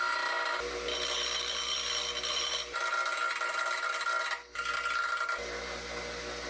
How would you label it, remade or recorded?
recorded